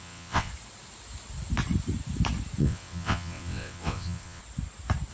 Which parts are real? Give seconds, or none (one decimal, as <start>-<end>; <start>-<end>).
0.5-2.6; 4.4-5.1